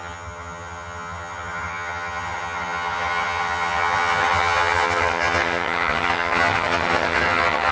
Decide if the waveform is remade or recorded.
remade